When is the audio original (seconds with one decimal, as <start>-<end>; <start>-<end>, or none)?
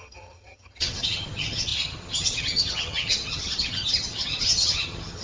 none